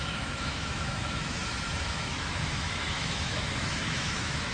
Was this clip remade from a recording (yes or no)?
yes